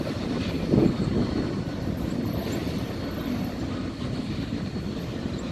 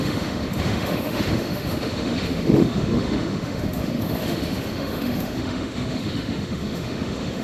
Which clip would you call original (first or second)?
first